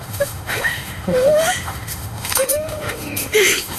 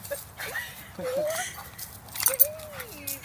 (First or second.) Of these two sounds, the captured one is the second